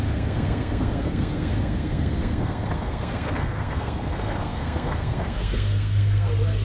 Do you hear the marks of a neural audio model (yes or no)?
yes